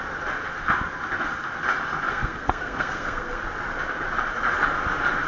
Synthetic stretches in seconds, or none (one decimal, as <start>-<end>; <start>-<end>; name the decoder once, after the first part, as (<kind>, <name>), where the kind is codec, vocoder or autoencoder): 2.1-3.4 (codec, SNAC)